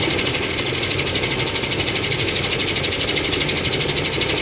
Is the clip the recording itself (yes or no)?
yes